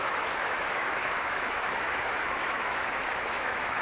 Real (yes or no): no